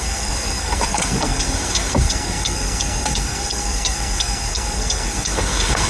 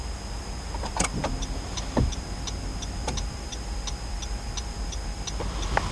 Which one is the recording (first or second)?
second